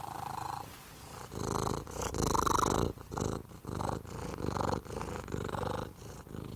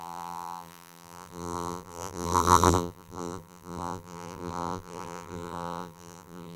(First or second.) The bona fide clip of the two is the first